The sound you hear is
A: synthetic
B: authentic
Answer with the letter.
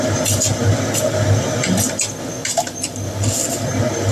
B